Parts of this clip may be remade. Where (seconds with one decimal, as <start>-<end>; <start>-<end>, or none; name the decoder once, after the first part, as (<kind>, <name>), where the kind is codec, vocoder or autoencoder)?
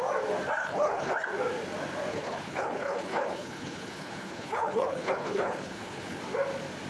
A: 0.6-1.1 (codec, HILCodec); 2.1-6.2